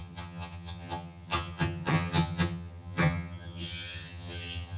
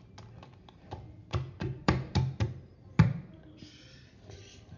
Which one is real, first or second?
second